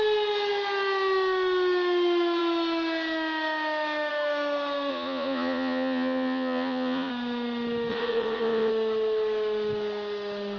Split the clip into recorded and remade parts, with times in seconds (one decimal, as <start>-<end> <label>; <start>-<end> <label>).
0.0-4.9 recorded; 4.9-7.1 remade; 7.1-7.9 recorded; 7.9-8.7 remade; 8.7-10.6 recorded